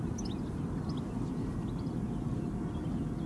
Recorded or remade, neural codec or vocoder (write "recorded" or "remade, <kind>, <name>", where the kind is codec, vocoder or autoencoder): recorded